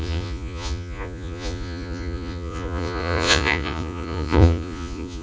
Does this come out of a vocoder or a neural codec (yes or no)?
yes